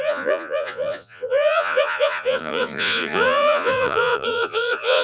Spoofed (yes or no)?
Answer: yes